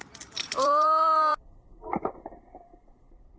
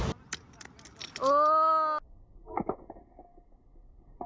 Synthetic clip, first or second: first